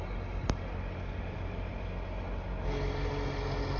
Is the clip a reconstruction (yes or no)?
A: no